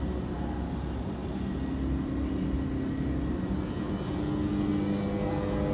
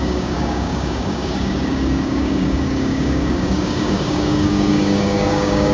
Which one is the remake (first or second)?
second